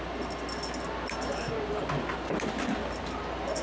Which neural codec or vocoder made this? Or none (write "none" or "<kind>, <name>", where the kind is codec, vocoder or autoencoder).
none